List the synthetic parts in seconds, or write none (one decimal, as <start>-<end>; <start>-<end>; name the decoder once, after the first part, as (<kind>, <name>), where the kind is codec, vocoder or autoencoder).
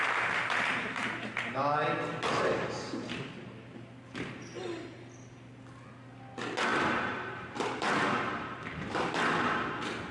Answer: 6.7-9.3 (vocoder, BigVGAN v2)